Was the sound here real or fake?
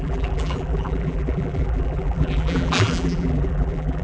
fake